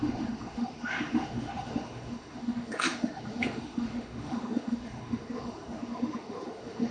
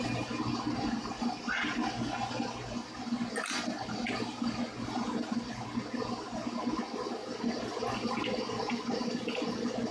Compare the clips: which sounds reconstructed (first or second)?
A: first